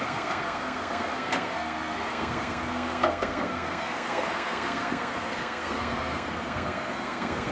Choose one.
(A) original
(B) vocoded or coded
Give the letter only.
B